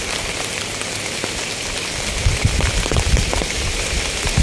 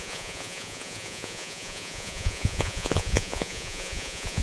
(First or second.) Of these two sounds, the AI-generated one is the second